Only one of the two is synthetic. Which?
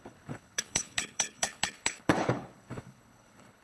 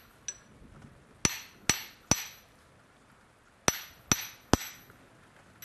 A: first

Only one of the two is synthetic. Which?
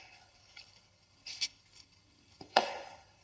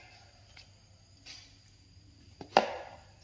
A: first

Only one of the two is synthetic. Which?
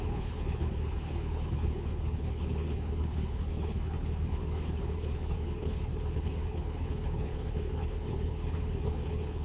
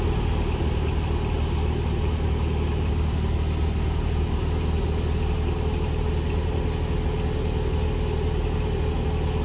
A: first